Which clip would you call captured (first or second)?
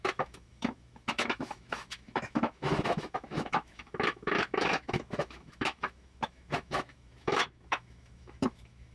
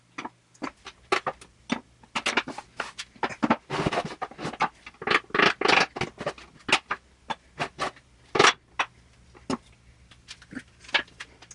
second